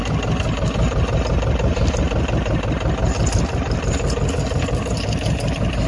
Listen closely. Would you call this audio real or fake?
real